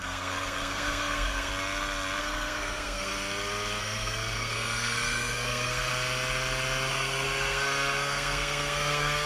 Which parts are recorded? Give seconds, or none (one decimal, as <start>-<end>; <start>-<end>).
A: 1.5-2.2; 3.1-3.8; 5.9-6.9